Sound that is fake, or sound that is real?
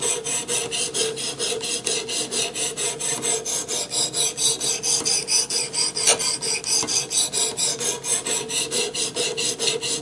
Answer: real